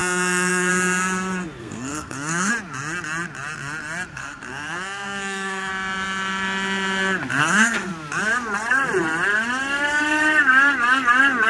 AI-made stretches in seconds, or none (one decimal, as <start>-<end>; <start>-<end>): 0.0-0.7; 1.6-2.5; 4.1-5.7; 7.4-7.9

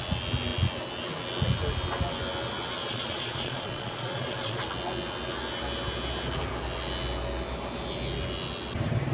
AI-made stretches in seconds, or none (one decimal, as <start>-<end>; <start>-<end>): 2.8-4.6

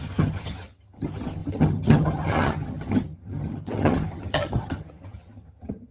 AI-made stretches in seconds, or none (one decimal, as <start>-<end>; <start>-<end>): 0.0-5.9